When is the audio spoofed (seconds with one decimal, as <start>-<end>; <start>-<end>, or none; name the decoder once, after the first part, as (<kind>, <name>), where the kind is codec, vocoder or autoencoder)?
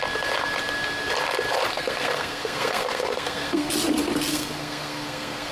1.7-3.7 (codec, SNAC); 4.3-5.5